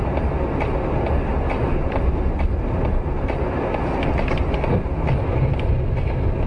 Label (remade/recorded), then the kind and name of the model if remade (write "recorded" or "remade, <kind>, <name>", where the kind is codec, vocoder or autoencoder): recorded